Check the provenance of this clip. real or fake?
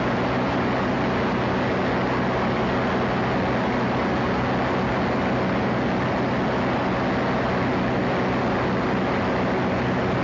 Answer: real